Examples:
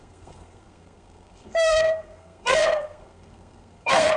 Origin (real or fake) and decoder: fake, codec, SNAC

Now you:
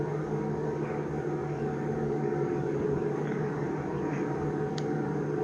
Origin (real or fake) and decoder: fake, codec, DAC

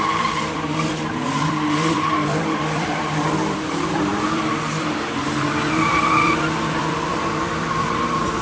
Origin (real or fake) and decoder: fake, vocoder, BigVGAN v2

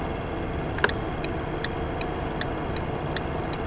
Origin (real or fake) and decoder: real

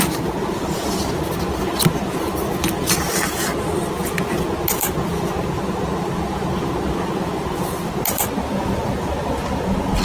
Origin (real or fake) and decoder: real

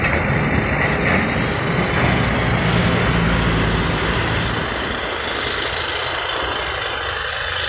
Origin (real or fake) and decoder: real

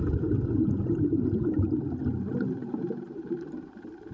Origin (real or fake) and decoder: fake, vocoder, BigVGAN v2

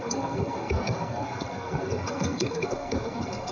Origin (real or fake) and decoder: fake, codec, SNAC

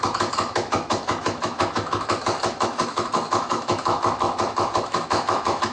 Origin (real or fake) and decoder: fake, autoencoder, DAC-VAE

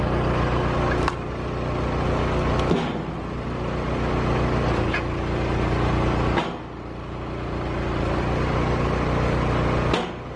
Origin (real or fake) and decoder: real